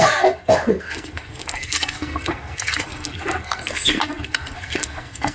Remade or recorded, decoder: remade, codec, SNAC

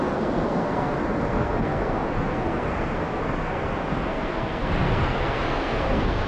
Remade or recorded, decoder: remade, codec, SNAC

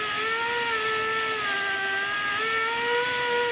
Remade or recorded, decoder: recorded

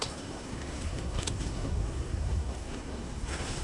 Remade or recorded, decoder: remade, codec, SNAC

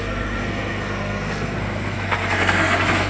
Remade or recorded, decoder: remade, codec, SNAC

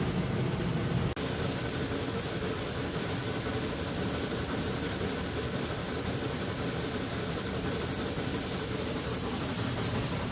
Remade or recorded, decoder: recorded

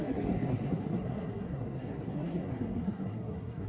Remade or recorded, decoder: remade, codec, SNAC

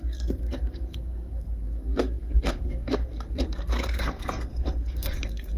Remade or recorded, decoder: remade, codec, SNAC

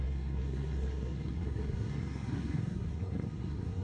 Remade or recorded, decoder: remade, codec, SNAC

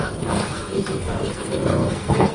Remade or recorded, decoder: remade, codec, SNAC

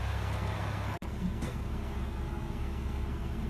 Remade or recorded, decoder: remade, codec, SNAC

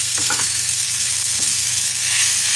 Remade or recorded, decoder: remade, codec, SNAC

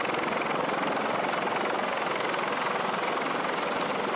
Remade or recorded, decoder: recorded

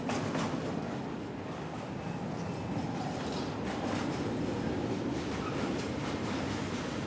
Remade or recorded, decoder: recorded